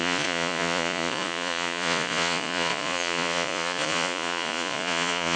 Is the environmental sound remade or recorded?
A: remade